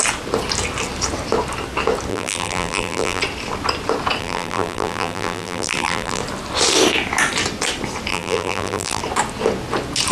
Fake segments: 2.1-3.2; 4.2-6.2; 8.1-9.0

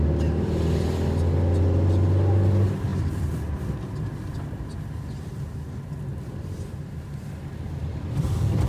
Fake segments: 2.9-3.5; 6.1-6.8; 7.8-8.7

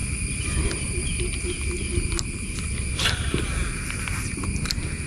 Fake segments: none

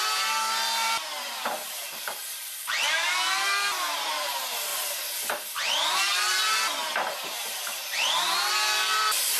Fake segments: 0.0-4.7; 5.3-9.4

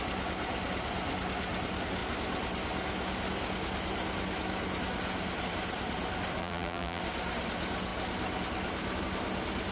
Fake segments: 6.4-7.0

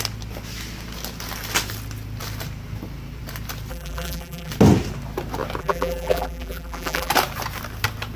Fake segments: 3.7-4.5; 5.6-7.1

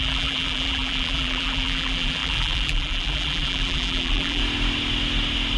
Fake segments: 0.0-4.4

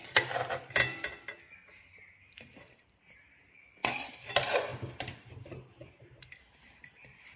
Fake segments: 0.0-1.1; 1.8-7.4